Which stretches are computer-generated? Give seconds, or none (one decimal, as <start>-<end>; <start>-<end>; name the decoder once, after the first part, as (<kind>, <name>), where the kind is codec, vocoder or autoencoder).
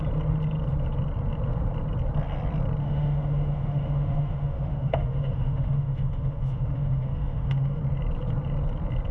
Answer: 2.8-7.8 (autoencoder, DAC-VAE)